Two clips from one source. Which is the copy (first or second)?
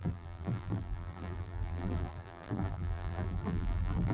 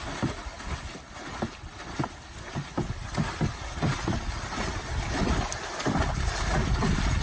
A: first